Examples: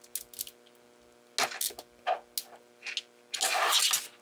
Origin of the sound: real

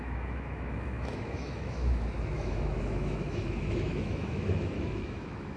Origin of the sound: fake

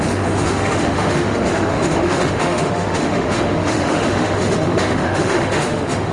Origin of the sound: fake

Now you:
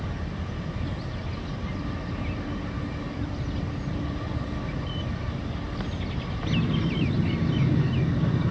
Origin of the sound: real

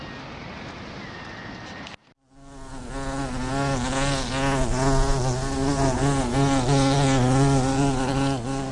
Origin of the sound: real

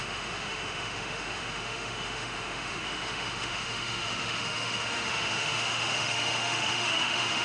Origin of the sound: fake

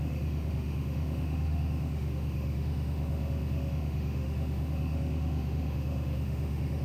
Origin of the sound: fake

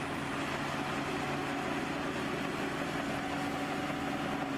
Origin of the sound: real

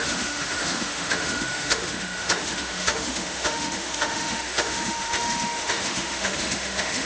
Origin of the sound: fake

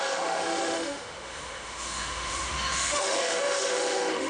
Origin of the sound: fake